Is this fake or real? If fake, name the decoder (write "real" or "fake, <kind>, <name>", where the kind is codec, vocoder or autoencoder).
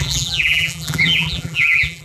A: fake, vocoder, BigVGAN v2